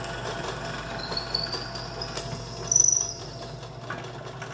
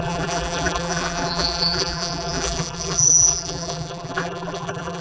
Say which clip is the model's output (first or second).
second